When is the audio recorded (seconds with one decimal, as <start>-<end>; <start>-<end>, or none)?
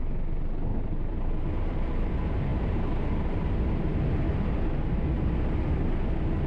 0.0-0.7; 2.1-6.5